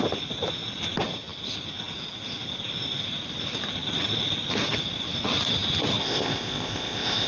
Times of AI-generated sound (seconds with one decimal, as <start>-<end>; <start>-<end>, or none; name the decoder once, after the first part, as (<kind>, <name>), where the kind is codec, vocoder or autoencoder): 6.0-7.3 (codec, ZipCodec)